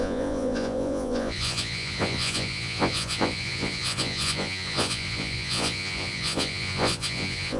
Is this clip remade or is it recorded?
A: remade